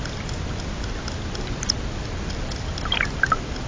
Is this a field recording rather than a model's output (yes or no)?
yes